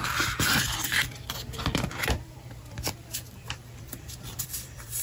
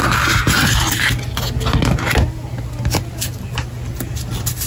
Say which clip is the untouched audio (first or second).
second